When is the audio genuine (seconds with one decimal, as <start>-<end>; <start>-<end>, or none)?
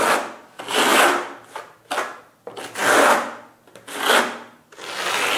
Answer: 0.0-5.4